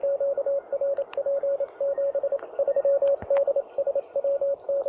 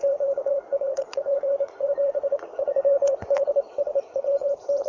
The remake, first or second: second